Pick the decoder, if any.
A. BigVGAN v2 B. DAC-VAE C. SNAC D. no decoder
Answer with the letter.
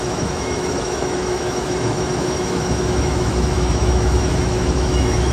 B